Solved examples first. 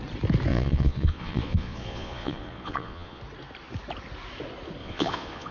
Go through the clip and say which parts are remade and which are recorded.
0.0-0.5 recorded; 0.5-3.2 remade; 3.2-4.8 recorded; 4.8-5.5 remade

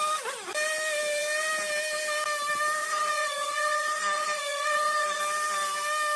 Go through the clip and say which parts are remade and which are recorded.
0.0-2.8 recorded; 2.8-5.2 remade; 5.2-6.2 recorded

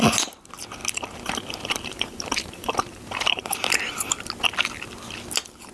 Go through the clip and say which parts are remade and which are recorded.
0.0-0.8 recorded; 0.8-4.2 remade; 4.2-5.7 recorded

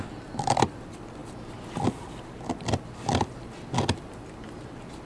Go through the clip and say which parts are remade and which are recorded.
0.0-5.0 recorded

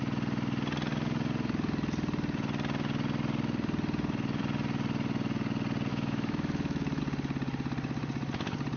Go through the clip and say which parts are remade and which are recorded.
0.0-5.9 recorded; 5.9-7.0 remade; 7.0-8.8 recorded

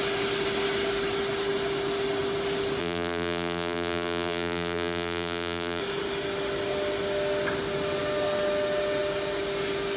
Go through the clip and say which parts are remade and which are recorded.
0.0-2.8 recorded; 2.8-5.8 remade; 5.8-10.0 recorded

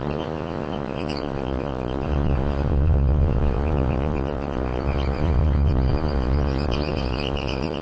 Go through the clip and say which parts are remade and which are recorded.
0.0-7.8 remade

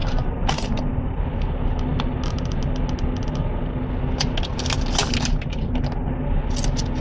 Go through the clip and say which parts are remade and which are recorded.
0.0-1.2 remade; 1.2-7.0 recorded